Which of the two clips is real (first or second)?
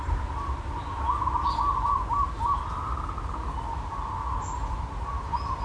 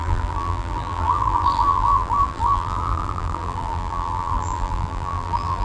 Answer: first